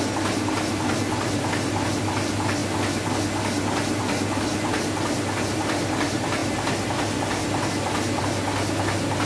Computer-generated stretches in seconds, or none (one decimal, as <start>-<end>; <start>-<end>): none